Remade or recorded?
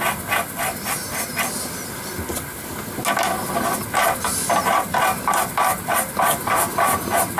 recorded